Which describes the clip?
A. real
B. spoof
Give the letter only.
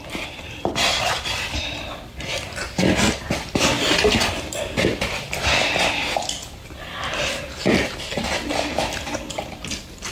A